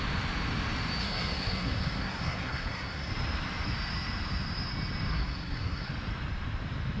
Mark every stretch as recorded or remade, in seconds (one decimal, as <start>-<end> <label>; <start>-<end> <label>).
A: 0.0-1.0 recorded; 1.0-3.1 remade; 3.1-5.1 recorded; 5.1-5.9 remade; 5.9-7.0 recorded